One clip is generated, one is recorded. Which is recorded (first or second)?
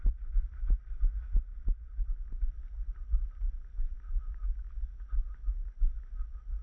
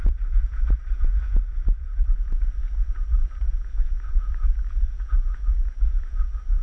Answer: first